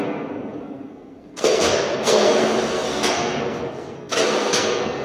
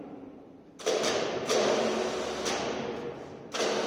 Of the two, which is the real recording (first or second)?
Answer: second